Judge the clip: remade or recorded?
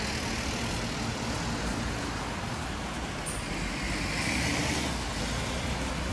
recorded